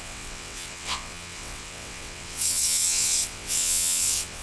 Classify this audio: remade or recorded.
remade